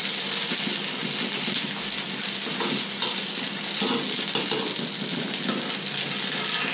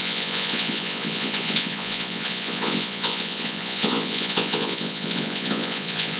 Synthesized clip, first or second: second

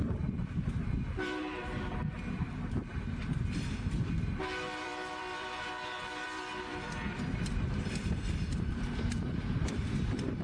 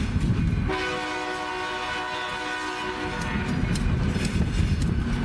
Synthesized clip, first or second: first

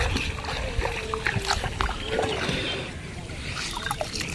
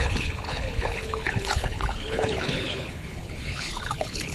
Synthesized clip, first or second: second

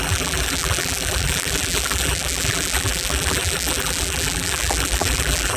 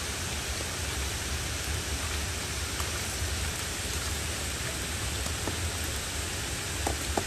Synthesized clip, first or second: first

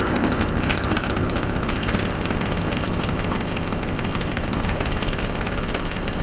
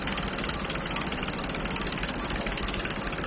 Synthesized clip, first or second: first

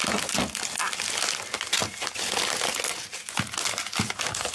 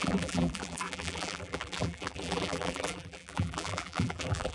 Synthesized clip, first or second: second